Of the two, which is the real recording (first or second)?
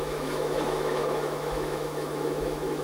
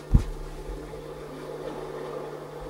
second